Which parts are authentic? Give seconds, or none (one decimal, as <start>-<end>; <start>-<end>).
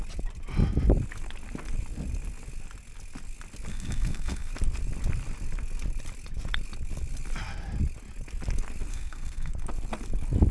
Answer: 0.0-3.7; 4.5-8.9; 9.5-10.5